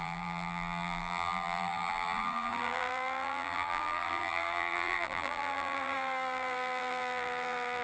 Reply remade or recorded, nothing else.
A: remade